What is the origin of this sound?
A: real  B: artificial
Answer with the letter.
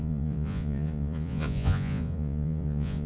B